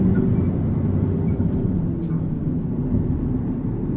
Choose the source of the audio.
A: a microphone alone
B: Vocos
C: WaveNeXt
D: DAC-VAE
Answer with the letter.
A